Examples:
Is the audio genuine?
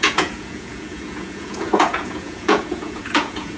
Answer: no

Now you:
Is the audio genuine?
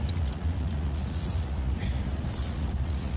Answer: no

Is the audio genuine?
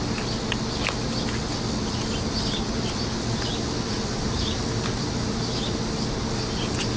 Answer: yes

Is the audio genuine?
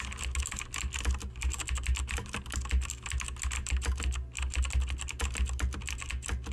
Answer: yes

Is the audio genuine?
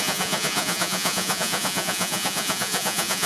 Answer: no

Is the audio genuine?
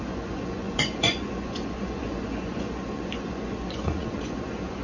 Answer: no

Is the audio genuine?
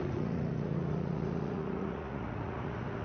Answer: no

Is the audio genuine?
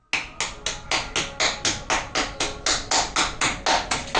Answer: yes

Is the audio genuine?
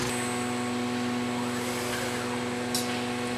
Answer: yes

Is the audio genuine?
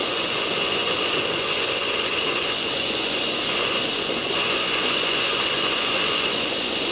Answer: no